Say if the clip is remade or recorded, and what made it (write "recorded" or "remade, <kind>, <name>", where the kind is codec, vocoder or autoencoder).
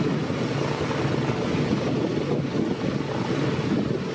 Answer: recorded